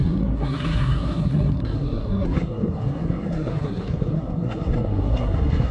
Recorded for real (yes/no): no